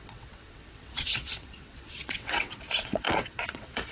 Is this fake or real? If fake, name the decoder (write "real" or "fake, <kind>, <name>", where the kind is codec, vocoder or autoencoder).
fake, vocoder, WaveNeXt